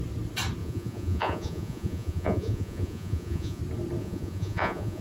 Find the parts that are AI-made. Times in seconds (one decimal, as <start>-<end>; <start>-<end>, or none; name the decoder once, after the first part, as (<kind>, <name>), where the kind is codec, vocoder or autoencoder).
0.6-3.6 (vocoder, Vocos); 4.0-5.0